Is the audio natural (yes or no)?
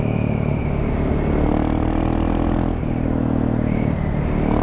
yes